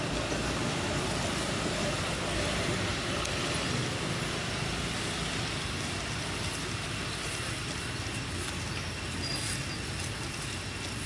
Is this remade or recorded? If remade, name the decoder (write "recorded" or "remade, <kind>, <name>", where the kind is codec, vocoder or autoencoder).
recorded